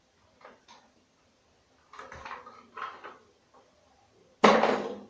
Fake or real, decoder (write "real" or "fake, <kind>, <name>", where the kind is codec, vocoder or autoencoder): real